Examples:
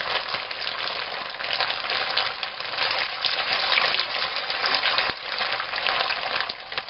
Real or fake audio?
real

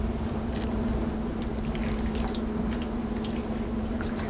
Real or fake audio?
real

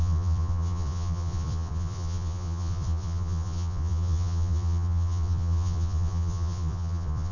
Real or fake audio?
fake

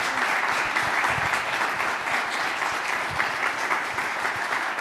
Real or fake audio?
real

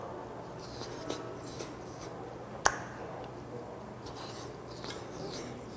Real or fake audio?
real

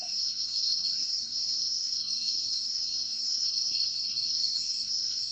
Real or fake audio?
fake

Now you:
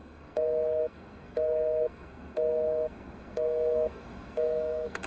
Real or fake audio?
fake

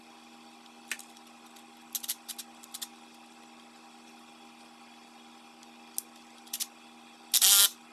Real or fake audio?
real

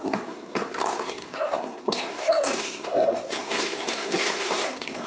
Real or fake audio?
fake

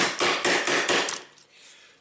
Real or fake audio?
real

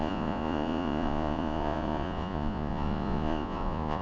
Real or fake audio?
fake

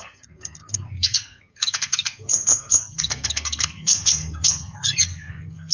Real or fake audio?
fake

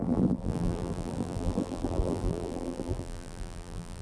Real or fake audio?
fake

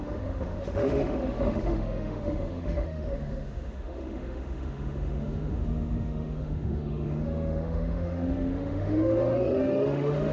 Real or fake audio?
fake